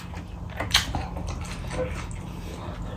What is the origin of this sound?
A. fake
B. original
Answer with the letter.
B